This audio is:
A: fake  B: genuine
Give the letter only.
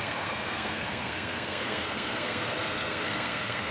A